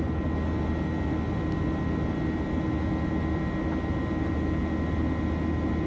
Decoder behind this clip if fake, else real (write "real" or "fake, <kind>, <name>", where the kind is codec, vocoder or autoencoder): real